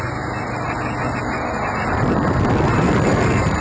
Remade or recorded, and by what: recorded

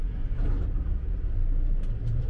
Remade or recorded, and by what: recorded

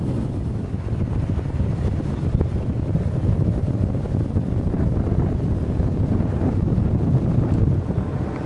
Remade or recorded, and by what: recorded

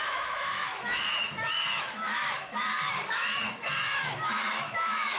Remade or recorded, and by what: remade, autoencoder, DAC-VAE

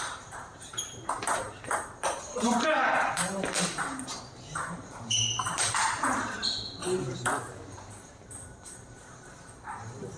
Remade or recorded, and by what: remade, vocoder, BigVGAN v2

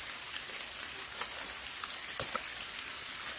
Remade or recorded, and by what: recorded